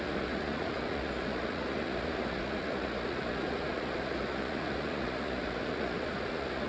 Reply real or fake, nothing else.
fake